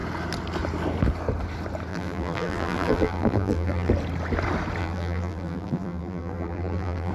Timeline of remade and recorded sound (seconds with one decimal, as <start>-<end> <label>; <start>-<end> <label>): 0.0-1.9 recorded; 1.9-3.9 remade; 3.9-4.8 recorded; 4.8-7.1 remade